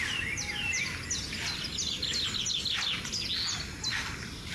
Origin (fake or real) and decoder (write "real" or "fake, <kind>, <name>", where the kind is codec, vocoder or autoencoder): real